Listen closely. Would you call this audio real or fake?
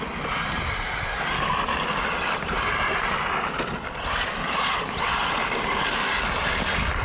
real